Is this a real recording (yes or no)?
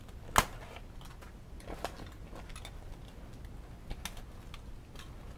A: yes